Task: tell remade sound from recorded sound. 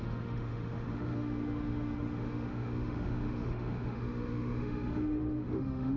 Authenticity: remade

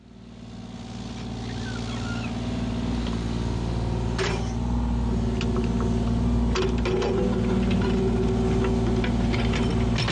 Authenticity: recorded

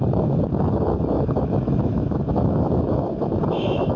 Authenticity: remade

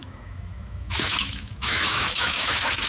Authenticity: remade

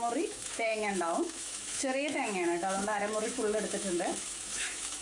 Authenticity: remade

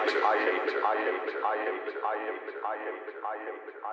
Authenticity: recorded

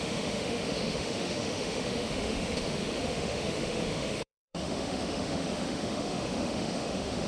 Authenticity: remade